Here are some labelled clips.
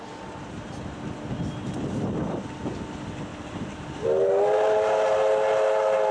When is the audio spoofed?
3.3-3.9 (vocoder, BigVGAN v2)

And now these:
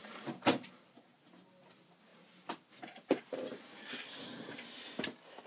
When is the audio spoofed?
0.0-0.7 (vocoder, BigVGAN v2); 2.1-2.6; 3.4-4.2

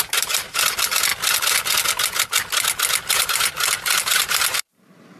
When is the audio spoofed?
0.0-1.1 (vocoder, BigVGAN v2); 3.1-5.2

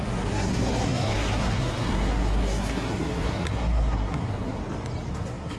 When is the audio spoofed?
0.0-4.6 (codec, SNAC); 5.1-5.6